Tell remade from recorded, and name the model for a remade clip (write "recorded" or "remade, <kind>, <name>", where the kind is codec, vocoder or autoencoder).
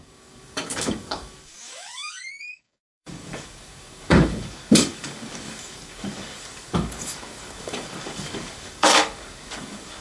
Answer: remade, codec, DAC